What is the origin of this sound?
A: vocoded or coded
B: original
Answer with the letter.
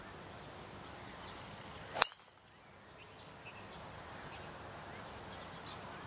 B